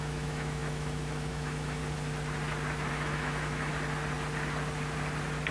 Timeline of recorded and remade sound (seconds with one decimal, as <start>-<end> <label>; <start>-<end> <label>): 0.0-1.8 remade; 1.8-2.9 recorded; 2.9-3.7 remade; 3.7-5.5 recorded